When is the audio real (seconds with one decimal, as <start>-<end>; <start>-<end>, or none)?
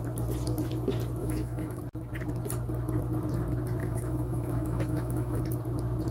0.0-1.2; 1.8-3.8; 5.4-6.1